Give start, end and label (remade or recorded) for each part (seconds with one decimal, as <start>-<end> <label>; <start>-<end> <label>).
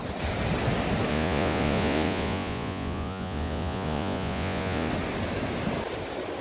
0.0-1.1 recorded; 1.1-4.9 remade; 4.9-6.4 recorded